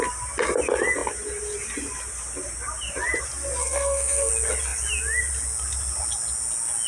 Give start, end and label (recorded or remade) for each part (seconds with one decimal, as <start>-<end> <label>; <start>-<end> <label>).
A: 0.0-3.6 recorded; 3.6-4.3 remade; 4.3-6.9 recorded